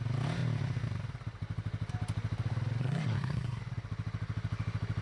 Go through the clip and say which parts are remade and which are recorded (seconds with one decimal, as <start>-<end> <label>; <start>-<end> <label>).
0.0-2.8 recorded; 2.8-3.6 remade; 3.6-5.0 recorded